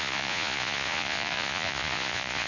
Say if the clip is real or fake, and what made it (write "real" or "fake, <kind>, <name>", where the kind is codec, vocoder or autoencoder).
fake, vocoder, Vocos